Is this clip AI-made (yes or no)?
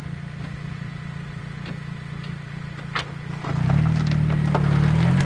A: no